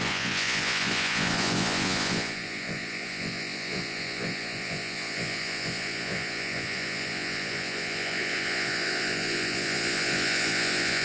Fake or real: fake